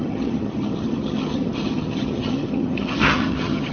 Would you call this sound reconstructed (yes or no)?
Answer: yes